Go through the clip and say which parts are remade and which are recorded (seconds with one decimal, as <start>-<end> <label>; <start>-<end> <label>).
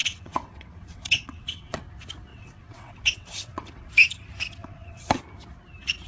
0.0-1.8 remade; 1.8-2.3 recorded; 2.3-3.9 remade; 3.9-4.6 recorded; 4.6-5.2 remade; 5.2-6.1 recorded